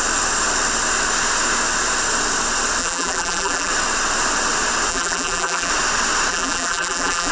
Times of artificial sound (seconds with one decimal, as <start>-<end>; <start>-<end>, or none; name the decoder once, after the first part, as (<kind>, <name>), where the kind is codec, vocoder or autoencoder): 2.8-3.7 (vocoder, BigVGAN v2); 4.9-5.7; 6.3-7.3